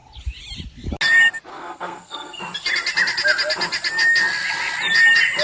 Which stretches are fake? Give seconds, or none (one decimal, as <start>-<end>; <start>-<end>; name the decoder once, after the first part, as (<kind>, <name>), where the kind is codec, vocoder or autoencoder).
1.5-2.4 (codec, SNAC)